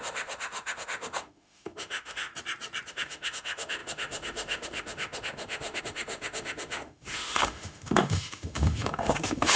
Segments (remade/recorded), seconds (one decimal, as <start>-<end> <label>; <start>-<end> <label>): 0.0-2.3 remade; 2.3-2.9 recorded; 2.9-9.6 remade